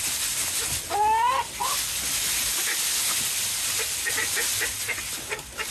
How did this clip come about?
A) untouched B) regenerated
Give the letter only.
A